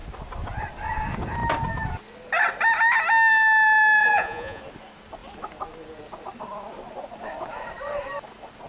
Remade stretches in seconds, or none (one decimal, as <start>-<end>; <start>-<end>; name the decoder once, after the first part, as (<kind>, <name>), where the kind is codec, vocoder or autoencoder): 4.0-4.6 (vocoder, Vocos)